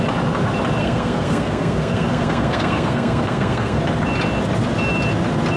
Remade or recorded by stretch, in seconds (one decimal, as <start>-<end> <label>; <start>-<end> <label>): 0.0-0.8 recorded; 0.8-3.8 remade; 3.8-5.6 recorded